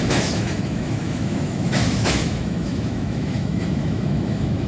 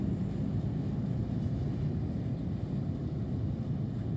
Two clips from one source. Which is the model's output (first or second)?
first